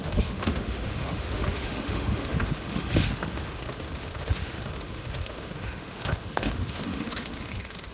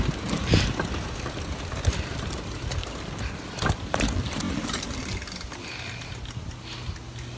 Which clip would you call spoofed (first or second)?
first